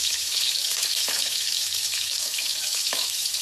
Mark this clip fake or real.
fake